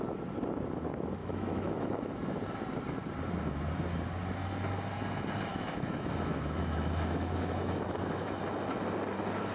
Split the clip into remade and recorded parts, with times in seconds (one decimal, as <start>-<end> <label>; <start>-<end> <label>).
0.0-1.2 recorded; 1.2-2.4 remade; 2.4-5.5 recorded; 5.5-8.4 remade; 8.4-9.5 recorded